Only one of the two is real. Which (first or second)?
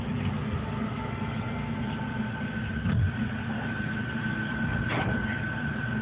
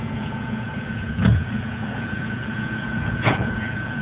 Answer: first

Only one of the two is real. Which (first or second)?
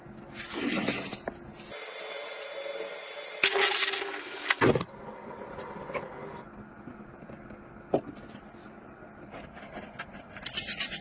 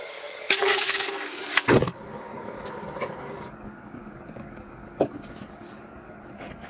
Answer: first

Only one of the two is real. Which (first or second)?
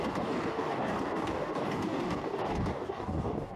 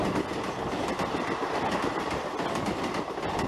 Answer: second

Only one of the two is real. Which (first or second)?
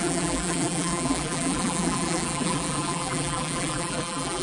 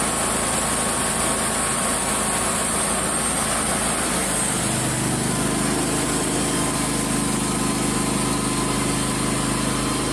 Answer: second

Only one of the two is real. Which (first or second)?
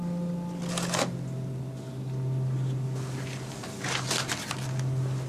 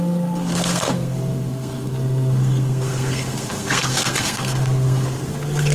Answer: first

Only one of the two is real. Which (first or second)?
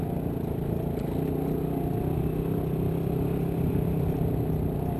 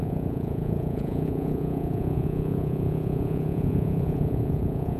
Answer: first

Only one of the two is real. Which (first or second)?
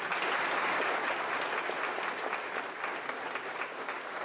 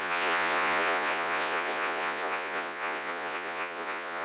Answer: first